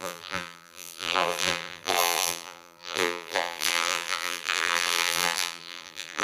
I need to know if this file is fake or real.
fake